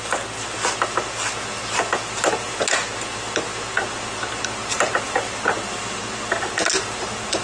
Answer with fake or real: real